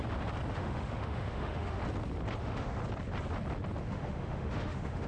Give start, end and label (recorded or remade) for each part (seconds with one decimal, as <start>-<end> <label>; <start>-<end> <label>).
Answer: 0.0-0.5 recorded; 0.5-1.8 remade; 1.8-2.4 recorded; 2.4-2.8 remade; 2.8-3.8 recorded; 3.8-5.1 remade